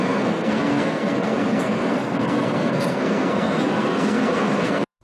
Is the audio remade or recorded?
remade